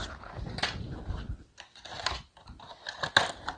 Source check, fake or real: real